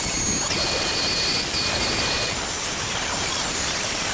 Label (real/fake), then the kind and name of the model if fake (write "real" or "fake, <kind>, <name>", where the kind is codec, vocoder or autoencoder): real